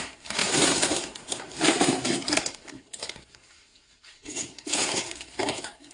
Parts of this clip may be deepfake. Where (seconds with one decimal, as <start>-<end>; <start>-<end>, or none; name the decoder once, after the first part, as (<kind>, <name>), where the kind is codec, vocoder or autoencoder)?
0.0-5.9 (codec, SNAC)

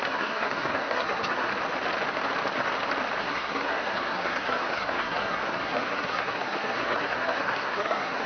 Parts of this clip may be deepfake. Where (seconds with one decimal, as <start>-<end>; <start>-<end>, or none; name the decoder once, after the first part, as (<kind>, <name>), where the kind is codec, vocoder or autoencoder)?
0.0-1.5 (codec, SNAC); 3.2-8.3